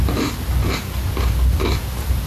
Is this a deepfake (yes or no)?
no